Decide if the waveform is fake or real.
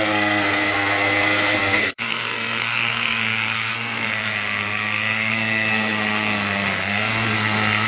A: fake